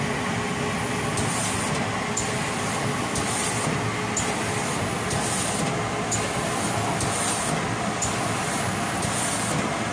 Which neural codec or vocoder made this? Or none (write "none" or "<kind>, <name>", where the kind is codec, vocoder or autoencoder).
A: none